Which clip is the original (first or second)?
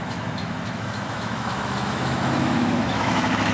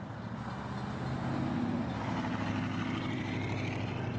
second